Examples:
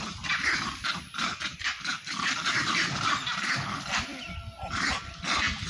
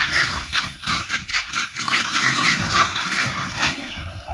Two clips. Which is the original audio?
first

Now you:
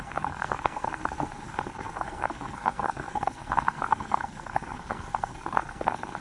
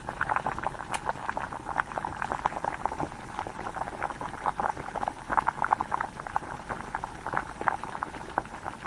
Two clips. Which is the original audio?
second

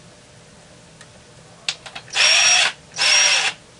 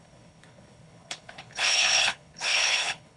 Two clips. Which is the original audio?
first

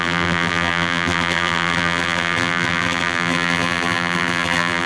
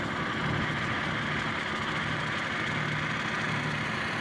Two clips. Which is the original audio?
second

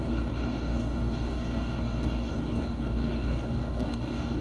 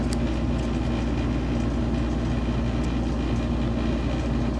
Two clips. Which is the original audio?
second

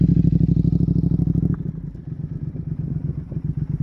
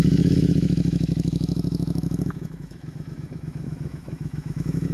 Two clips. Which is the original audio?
first